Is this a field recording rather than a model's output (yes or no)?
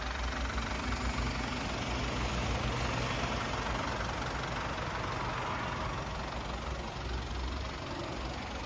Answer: yes